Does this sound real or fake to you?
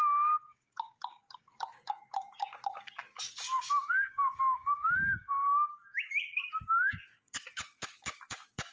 fake